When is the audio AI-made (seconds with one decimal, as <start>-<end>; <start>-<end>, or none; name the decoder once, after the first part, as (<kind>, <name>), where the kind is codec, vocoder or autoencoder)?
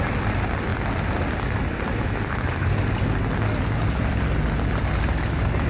none